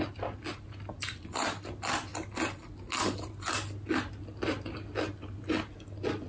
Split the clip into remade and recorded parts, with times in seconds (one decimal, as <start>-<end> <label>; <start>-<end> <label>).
0.0-6.3 recorded